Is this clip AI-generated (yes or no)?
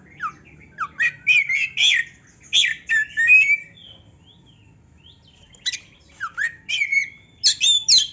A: no